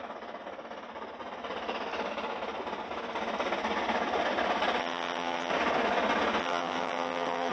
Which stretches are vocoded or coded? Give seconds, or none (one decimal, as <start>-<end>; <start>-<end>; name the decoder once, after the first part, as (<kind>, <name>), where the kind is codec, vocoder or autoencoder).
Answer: 4.8-5.5 (vocoder, HiFi-GAN); 6.4-7.5